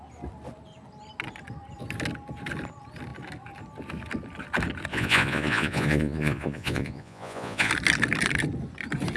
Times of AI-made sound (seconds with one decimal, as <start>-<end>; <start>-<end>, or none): 4.9-7.7